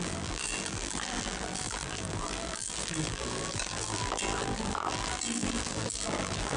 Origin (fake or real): fake